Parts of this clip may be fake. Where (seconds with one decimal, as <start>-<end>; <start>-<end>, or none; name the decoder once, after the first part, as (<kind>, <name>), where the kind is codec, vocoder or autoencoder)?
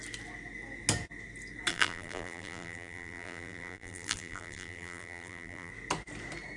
1.7-5.7 (vocoder, BigVGAN v2)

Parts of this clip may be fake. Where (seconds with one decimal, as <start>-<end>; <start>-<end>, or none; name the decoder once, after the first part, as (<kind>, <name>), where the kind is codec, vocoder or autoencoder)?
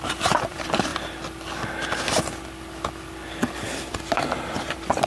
0.0-0.9 (vocoder, BigVGAN v2); 3.9-5.1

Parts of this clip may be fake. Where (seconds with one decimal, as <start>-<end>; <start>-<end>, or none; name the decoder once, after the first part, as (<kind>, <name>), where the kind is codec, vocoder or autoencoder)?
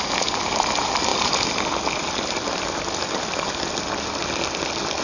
none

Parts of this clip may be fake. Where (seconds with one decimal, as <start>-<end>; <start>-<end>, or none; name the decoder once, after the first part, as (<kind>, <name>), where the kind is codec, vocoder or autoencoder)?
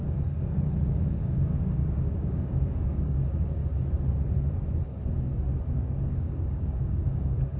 0.9-3.6 (codec, DAC); 5.8-7.6